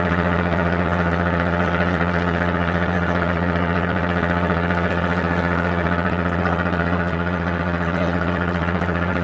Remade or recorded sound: remade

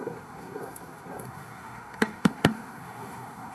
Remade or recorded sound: remade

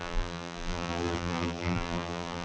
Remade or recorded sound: remade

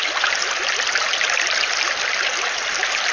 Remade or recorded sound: recorded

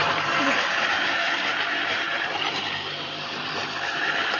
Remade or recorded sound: remade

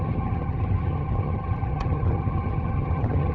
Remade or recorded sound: remade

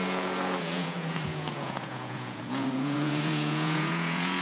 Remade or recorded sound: remade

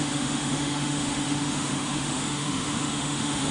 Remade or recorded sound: remade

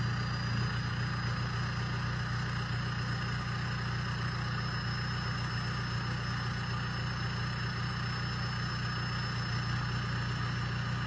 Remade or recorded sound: recorded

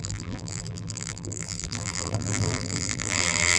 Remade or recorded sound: remade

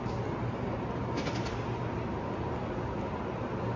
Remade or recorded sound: recorded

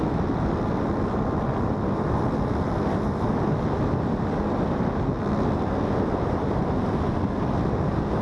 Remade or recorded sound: recorded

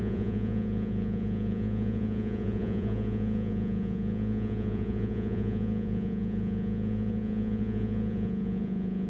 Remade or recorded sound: remade